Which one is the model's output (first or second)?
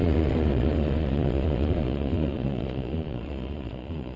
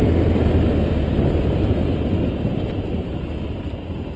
first